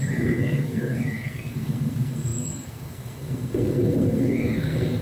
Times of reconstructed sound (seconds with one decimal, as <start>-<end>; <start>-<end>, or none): 0.0-5.0